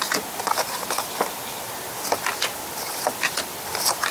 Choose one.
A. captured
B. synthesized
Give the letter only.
A